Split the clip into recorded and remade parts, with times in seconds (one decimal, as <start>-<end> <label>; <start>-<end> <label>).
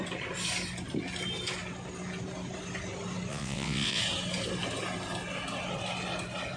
0.0-3.3 recorded; 3.3-4.0 remade; 4.0-6.6 recorded